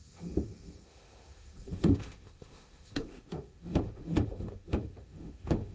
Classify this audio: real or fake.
fake